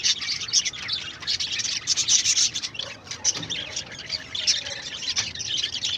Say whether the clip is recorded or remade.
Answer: recorded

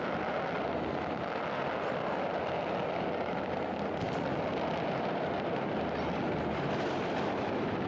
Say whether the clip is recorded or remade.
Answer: recorded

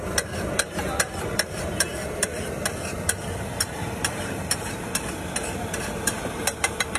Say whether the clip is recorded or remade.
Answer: remade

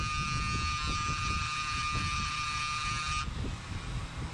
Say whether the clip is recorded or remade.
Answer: recorded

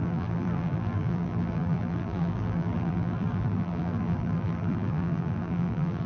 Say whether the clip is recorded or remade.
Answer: remade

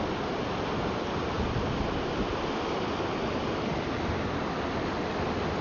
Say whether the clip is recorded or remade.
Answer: recorded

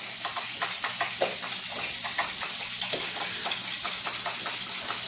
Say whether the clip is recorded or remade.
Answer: recorded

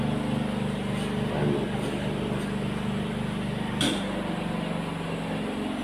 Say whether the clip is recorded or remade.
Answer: recorded